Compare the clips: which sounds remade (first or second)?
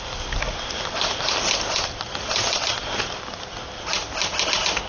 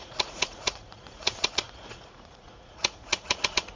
second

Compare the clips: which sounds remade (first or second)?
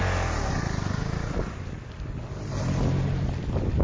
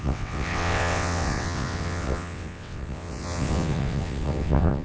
second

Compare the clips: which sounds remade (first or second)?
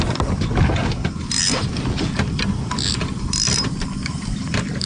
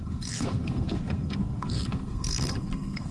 second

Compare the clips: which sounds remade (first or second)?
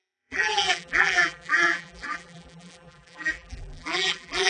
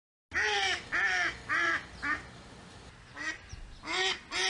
first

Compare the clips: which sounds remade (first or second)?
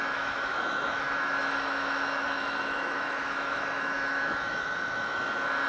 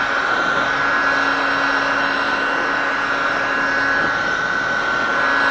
first